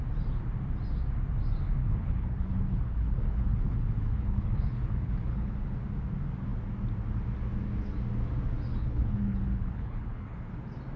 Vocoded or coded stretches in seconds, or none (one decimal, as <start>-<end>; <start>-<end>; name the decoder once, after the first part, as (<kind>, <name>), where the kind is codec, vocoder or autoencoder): 1.8-5.5 (codec, HILCodec); 8.7-10.5